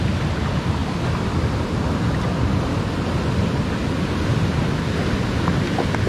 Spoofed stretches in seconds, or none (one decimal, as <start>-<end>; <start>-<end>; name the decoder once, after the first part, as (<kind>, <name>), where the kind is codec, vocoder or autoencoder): none